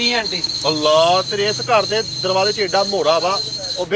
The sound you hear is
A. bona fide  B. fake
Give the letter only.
A